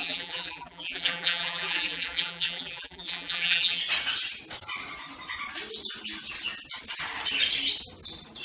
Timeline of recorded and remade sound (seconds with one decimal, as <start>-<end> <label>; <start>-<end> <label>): 0.0-3.8 remade; 3.8-8.4 recorded